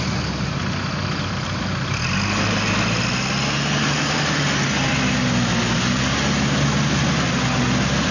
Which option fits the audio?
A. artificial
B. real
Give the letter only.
B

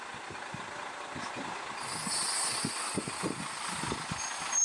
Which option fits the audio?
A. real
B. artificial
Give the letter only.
A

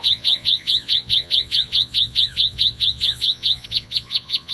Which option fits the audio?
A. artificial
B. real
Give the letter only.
A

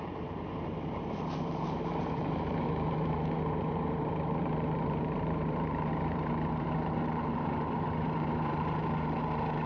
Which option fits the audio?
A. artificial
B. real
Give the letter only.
A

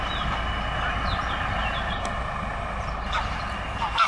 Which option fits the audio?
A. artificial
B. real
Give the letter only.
B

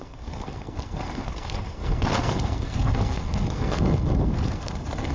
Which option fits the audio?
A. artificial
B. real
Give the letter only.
A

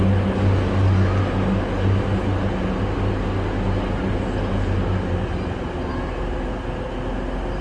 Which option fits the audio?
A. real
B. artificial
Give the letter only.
A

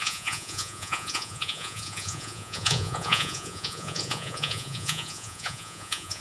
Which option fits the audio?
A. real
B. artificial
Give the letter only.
B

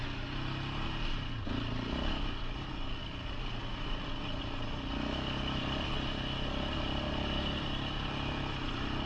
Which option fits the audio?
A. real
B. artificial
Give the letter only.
A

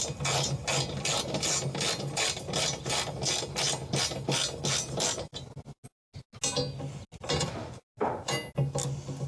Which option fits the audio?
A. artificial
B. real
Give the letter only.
B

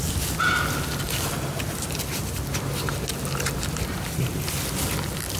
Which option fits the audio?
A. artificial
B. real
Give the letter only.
B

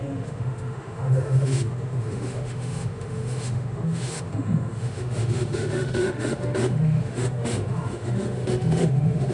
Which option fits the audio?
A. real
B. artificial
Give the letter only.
B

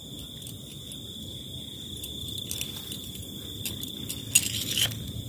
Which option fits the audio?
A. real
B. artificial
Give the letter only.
A